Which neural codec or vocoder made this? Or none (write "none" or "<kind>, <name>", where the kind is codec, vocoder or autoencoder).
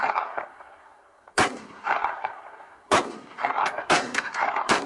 codec, SNAC